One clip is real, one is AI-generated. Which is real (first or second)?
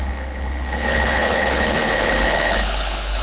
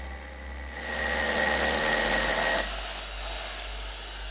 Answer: second